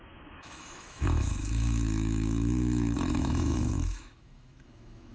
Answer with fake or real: fake